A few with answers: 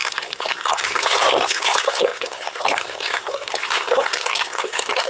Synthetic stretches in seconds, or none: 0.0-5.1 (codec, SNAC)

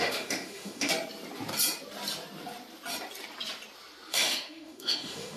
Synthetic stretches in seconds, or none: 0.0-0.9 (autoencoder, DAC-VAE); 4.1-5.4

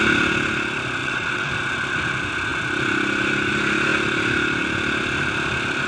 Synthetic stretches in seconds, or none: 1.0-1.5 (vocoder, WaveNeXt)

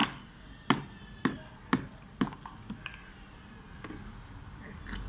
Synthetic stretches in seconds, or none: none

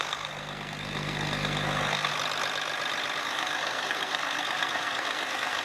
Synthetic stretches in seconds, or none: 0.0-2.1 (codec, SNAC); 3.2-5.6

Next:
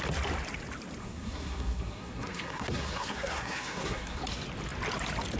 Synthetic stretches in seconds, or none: 1.0-4.2 (codec, SNAC)

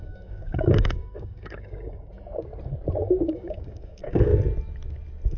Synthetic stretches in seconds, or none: 0.0-2.1 (codec, DAC); 3.0-4.3

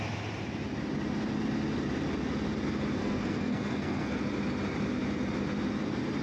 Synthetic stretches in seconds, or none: 3.0-4.2 (codec, SNAC)